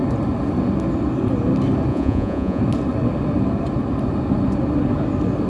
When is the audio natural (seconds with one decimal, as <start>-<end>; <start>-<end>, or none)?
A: 0.0-1.9; 2.6-5.5